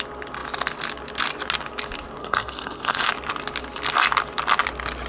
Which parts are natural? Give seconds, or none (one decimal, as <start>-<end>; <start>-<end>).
0.0-2.2; 3.1-5.1